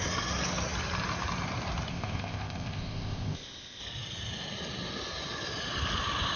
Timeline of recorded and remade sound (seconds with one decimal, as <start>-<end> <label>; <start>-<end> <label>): 0.0-1.9 recorded; 1.9-3.8 remade; 3.8-6.4 recorded